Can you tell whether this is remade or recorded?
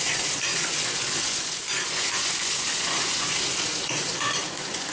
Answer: remade